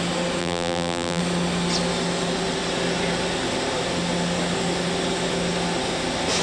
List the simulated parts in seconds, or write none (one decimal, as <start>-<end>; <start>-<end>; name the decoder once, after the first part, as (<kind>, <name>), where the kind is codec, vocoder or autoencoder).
0.4-1.2 (vocoder, BigVGAN v2)

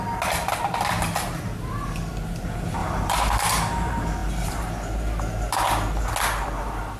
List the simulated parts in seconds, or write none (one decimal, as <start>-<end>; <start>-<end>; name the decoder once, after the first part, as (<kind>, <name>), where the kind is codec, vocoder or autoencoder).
2.8-3.3 (vocoder, BigVGAN v2)

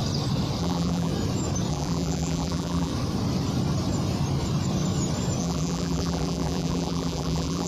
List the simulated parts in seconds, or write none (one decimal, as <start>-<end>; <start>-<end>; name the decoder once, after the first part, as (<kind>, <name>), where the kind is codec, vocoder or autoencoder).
0.6-1.1 (vocoder, BigVGAN v2); 1.7-2.9; 5.4-7.7

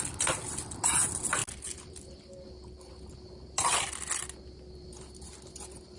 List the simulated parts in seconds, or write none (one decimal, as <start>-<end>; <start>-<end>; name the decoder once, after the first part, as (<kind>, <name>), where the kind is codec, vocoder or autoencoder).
none

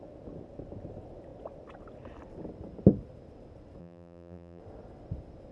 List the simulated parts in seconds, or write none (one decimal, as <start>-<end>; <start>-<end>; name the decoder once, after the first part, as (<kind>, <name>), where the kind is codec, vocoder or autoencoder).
3.8-4.6 (vocoder, BigVGAN v2)